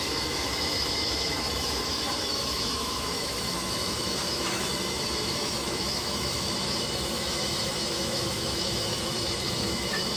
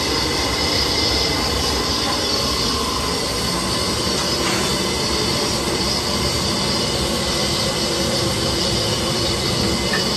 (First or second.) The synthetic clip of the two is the first